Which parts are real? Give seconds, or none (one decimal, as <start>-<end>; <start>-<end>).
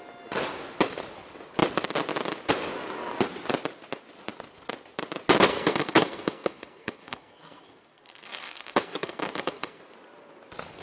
0.0-5.5; 9.8-10.8